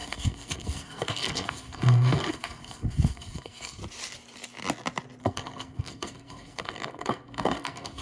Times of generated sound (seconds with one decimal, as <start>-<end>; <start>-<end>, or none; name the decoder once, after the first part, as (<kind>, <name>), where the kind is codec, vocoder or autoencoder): 0.0-3.8 (codec, SNAC); 5.2-8.0